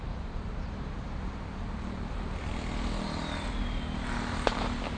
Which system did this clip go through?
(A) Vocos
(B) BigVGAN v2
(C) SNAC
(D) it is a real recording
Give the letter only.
D